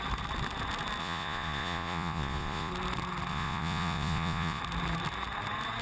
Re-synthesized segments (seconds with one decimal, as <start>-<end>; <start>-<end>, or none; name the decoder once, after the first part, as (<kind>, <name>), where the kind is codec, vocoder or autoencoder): 1.0-2.7 (vocoder, Vocos); 3.3-4.6